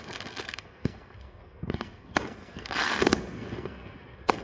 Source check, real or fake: fake